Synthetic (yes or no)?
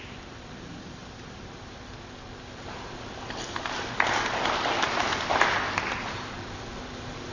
no